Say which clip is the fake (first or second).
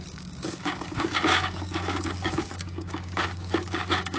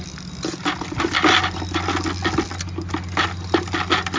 first